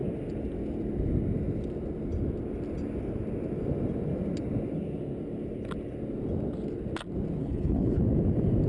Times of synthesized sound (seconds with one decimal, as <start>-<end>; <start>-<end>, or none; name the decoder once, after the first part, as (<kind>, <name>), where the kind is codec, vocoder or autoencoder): 7.4-8.0 (codec, HILCodec)